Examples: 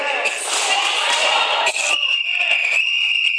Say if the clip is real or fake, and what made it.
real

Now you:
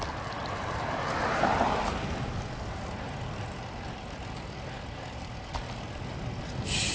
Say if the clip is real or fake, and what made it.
real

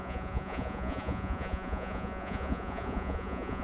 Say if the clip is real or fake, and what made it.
fake, vocoder, Vocos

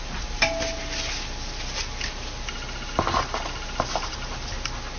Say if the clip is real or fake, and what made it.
real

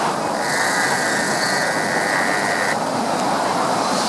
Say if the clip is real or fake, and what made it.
real